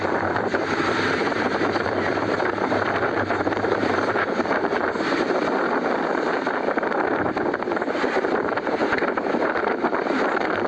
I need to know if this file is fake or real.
fake